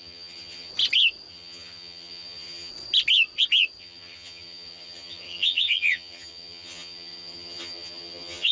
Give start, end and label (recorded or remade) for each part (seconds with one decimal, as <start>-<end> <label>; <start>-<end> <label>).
0.0-0.7 remade; 0.7-1.3 recorded; 1.3-2.7 remade; 2.7-3.8 recorded; 3.8-8.5 remade